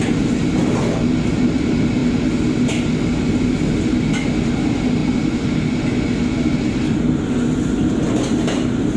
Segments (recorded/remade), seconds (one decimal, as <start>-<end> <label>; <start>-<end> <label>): 0.0-9.0 recorded